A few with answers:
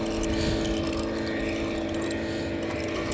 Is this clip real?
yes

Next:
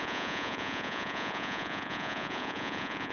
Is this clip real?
no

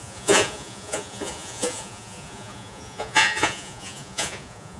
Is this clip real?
no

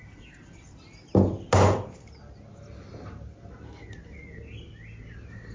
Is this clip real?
yes